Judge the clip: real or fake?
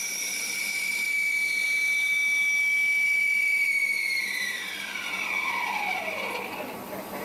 real